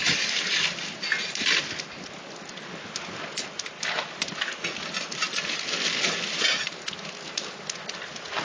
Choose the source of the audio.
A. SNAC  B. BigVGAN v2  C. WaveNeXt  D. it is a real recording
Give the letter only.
D